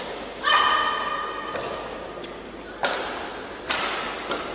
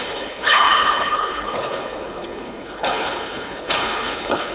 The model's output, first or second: second